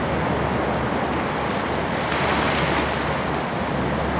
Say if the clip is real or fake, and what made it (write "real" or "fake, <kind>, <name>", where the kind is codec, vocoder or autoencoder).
real